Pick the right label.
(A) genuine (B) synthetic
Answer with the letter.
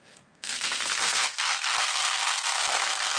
B